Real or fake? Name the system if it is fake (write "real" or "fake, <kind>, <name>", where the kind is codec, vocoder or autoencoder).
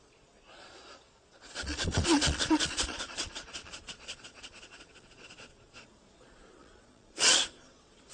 fake, vocoder, Vocos